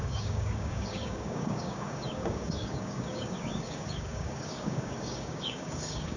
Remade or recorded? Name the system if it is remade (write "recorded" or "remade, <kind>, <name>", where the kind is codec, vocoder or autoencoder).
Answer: remade, codec, DAC